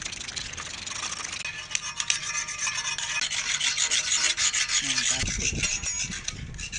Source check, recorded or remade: recorded